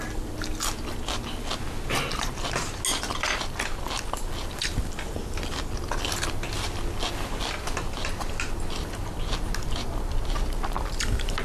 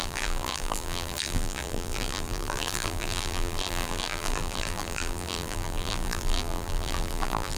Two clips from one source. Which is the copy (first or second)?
second